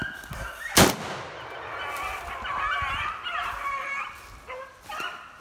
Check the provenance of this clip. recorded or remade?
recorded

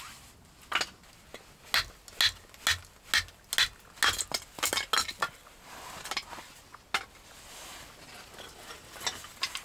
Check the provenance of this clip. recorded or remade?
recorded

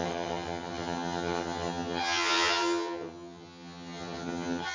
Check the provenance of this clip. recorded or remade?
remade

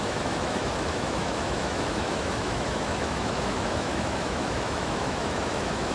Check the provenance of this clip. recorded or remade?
remade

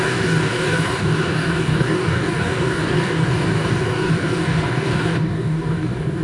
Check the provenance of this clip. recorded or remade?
remade